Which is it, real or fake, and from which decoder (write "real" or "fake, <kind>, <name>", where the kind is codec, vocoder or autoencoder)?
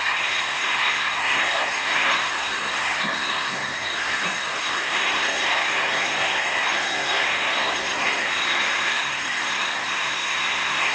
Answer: fake, codec, SNAC